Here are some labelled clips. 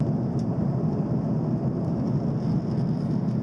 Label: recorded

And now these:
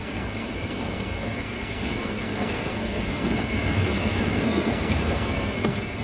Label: remade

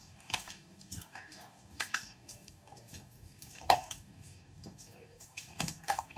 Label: remade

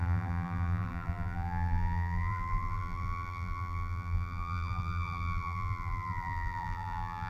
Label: remade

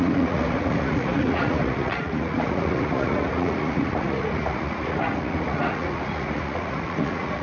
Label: remade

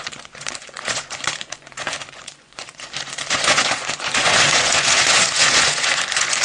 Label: remade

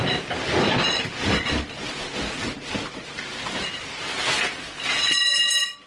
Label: recorded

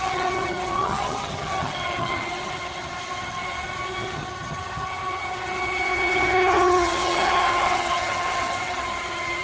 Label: remade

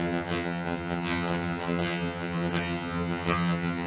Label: remade